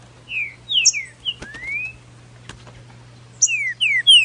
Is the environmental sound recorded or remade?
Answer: recorded